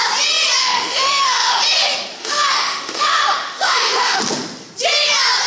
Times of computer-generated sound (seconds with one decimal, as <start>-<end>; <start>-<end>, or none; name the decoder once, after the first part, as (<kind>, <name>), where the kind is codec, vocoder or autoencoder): 0.6-1.6 (autoencoder, DAC-VAE); 2.2-4.2